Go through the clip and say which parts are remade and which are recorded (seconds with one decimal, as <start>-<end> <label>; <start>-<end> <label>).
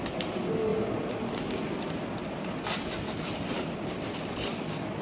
0.0-5.0 recorded